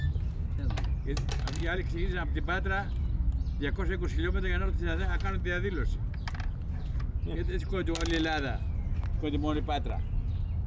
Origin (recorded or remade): recorded